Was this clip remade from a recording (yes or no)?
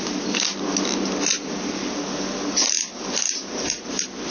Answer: no